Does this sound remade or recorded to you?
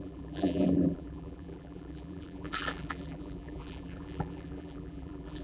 remade